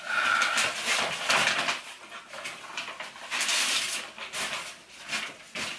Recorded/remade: recorded